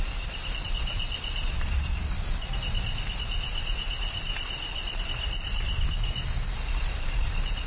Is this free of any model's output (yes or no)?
no